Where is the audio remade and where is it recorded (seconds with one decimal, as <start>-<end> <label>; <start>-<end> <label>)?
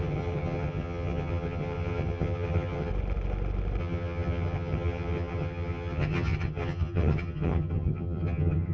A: 0.0-2.9 remade; 2.9-3.8 recorded; 3.8-8.7 remade